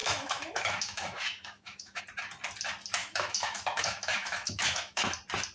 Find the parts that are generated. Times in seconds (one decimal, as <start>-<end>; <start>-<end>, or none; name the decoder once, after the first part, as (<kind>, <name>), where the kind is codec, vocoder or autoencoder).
0.0-2.0 (autoencoder, DAC-VAE); 3.0-5.0